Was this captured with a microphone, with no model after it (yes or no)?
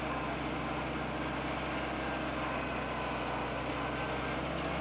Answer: yes